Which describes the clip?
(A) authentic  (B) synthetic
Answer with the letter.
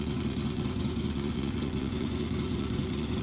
B